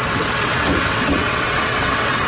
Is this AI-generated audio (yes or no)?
yes